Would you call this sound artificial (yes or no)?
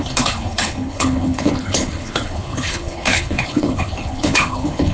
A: yes